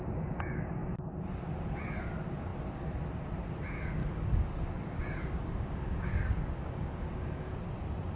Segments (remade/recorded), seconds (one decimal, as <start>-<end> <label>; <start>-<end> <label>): 0.0-4.0 recorded; 4.0-7.5 remade; 7.5-8.2 recorded